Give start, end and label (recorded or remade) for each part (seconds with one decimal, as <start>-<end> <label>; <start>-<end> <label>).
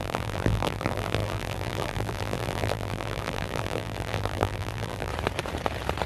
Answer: 0.0-5.1 remade; 5.1-6.1 recorded